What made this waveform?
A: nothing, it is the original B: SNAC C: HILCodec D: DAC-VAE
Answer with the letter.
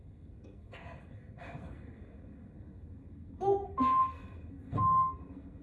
B